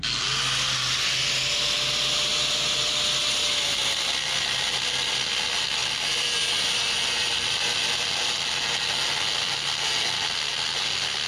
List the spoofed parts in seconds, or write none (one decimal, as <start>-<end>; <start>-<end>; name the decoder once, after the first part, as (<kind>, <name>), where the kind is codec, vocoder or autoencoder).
5.8-8.2 (vocoder, BigVGAN v2)